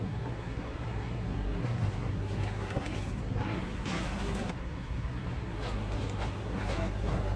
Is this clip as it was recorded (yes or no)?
no